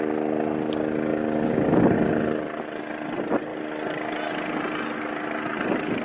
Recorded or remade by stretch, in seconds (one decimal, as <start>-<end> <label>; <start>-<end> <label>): 0.0-6.0 recorded